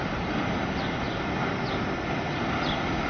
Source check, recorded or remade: recorded